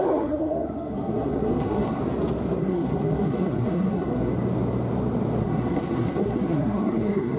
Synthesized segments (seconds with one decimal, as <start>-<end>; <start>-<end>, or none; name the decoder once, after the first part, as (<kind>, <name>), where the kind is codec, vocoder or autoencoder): 0.0-2.0 (codec, SNAC); 2.6-4.3; 5.4-7.4